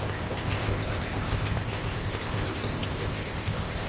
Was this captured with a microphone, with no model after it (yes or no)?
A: no